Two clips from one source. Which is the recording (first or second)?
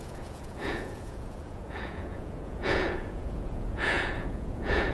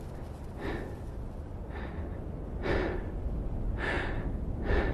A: second